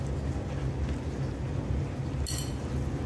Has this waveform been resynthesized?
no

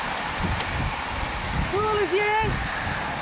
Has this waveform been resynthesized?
no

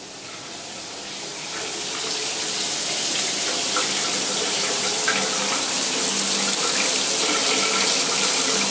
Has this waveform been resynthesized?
no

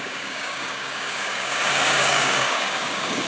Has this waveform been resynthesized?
yes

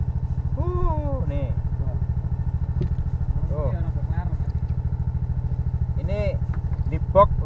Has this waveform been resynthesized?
no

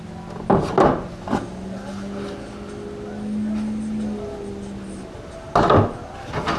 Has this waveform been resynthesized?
no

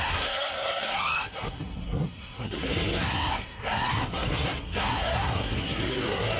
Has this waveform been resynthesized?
yes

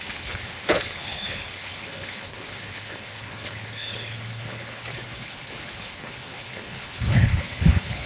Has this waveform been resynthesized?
yes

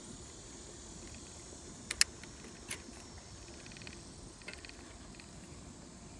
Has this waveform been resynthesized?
no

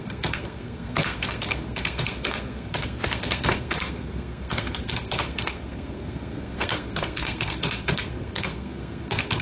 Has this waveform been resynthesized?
yes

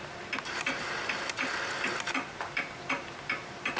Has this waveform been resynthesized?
yes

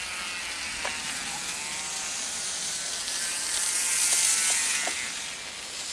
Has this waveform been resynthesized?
no